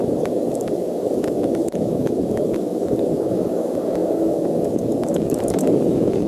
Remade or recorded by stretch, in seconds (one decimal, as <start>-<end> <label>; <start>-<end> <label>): 0.0-6.3 remade